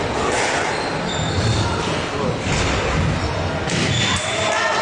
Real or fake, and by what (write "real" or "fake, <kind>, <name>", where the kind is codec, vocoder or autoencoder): real